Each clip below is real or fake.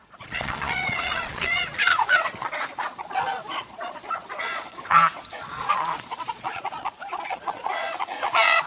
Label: fake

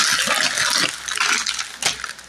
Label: real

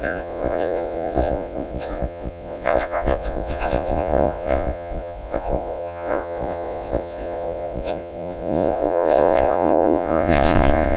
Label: fake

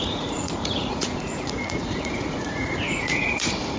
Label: fake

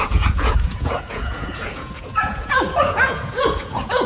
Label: fake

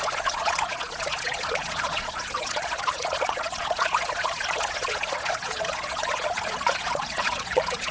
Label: fake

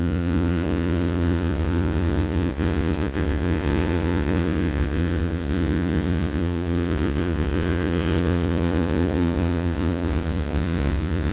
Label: fake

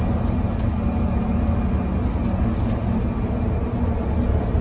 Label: real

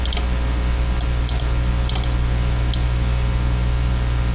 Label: real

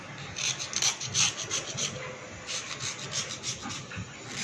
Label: real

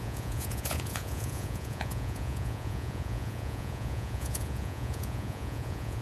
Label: fake